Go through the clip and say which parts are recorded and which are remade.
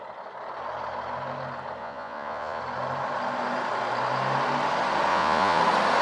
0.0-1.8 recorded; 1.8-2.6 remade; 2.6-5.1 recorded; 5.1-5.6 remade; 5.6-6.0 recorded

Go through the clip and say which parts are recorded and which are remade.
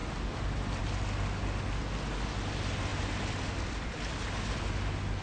0.0-5.2 recorded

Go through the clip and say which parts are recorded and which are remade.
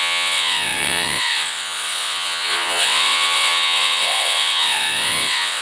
0.0-5.6 remade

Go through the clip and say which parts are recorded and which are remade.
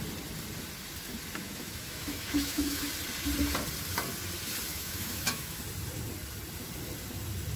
0.0-1.4 recorded; 1.4-2.9 remade; 2.9-4.7 recorded; 4.7-5.6 remade; 5.6-7.6 recorded